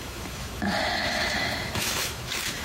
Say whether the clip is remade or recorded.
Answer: remade